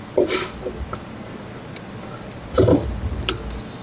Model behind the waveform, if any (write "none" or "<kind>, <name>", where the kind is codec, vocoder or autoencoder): none